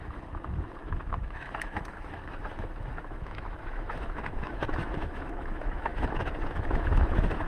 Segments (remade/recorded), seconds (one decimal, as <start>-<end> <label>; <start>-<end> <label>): 0.0-7.5 remade